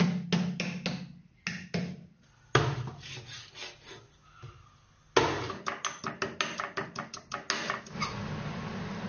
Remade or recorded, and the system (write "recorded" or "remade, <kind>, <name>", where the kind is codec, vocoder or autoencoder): recorded